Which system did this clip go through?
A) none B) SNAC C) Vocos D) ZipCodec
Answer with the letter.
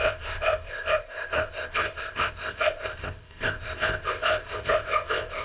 D